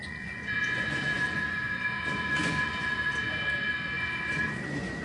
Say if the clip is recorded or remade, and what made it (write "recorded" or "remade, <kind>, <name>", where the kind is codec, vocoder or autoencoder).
remade, vocoder, Vocos